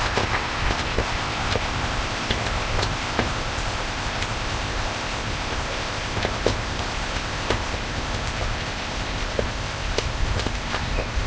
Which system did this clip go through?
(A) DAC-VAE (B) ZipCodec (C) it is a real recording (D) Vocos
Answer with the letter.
B